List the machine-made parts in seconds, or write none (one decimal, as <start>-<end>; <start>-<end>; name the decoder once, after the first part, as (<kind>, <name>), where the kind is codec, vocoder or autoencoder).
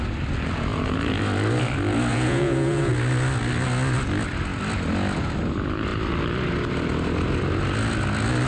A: 2.1-2.9 (vocoder, Vocos)